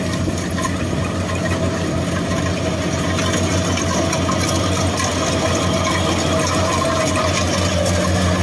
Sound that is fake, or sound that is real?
real